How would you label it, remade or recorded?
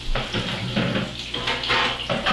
recorded